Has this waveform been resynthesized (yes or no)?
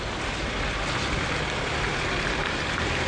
yes